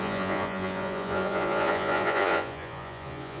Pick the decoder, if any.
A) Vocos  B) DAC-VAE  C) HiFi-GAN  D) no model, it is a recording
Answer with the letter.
A